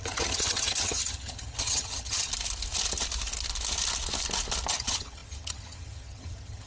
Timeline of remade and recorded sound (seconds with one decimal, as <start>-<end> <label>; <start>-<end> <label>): 0.0-2.3 remade; 2.3-4.7 recorded; 4.7-6.7 remade